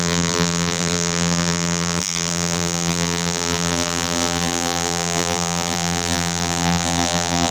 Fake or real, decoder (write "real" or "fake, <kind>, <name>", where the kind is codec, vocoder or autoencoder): fake, vocoder, BigVGAN v2